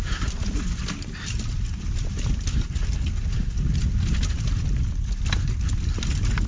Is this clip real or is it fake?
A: real